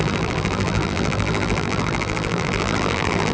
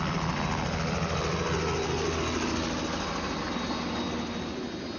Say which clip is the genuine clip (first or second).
second